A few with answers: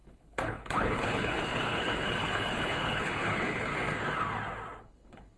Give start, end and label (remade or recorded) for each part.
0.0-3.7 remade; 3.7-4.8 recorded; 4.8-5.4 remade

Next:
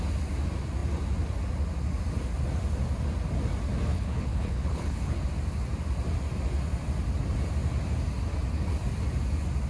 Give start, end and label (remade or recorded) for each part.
0.0-3.9 recorded; 3.9-5.2 remade; 5.2-9.7 recorded

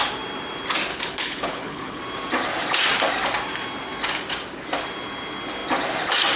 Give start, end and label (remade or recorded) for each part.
0.0-0.9 recorded; 0.9-2.0 remade; 2.0-6.4 recorded

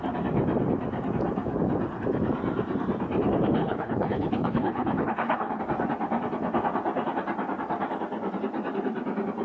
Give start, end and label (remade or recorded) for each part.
0.0-3.6 recorded; 3.6-5.6 remade; 5.6-9.4 recorded

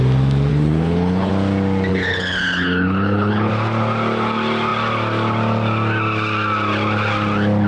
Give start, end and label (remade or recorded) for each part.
0.0-0.5 recorded; 0.5-1.3 remade; 1.3-1.9 recorded; 1.9-3.5 remade; 3.5-7.7 recorded

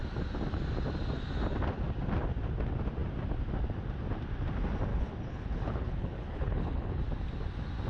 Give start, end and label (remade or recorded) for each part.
0.0-4.9 recorded; 4.9-7.0 remade; 7.0-7.9 recorded

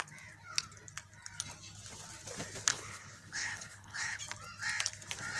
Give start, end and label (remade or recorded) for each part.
0.0-2.7 recorded; 2.7-4.2 remade; 4.2-5.4 recorded